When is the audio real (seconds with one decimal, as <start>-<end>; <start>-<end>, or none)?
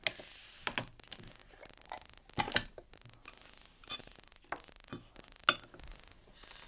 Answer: 0.0-6.7